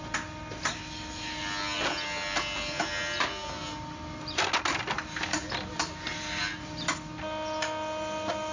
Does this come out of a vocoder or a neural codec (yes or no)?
no